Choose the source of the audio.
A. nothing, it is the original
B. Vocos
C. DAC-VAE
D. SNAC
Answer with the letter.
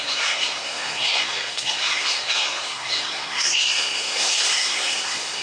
D